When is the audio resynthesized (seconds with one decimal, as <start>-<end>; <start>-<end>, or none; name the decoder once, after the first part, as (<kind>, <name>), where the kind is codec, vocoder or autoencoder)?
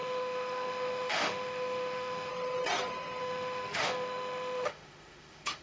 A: 0.0-2.3 (autoencoder, DAC-VAE); 3.2-5.6